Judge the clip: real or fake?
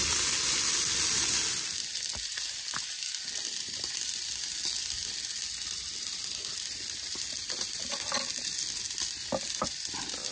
real